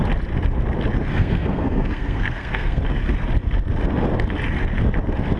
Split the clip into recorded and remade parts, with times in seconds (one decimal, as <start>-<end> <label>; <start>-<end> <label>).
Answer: 0.0-1.1 recorded; 1.1-2.8 remade; 2.8-5.4 recorded